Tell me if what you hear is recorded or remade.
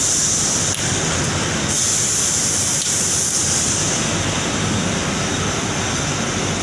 remade